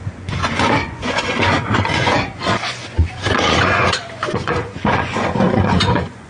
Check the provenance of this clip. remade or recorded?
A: remade